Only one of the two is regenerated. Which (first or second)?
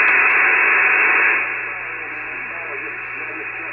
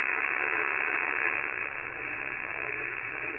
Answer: second